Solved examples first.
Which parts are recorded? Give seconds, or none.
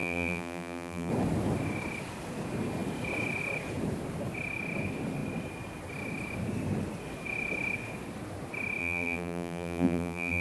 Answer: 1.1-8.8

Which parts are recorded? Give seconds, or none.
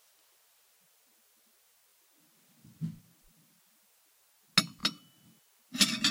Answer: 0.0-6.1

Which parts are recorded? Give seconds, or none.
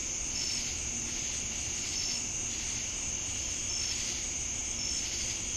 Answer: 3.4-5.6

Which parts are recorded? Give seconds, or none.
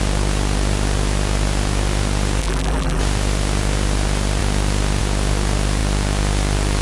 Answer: 0.0-2.4; 3.0-6.8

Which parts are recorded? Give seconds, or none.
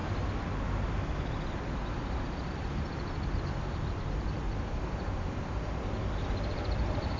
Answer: 0.0-1.2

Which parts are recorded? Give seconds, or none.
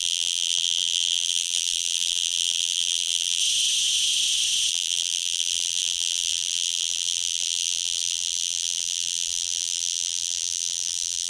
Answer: 3.4-4.7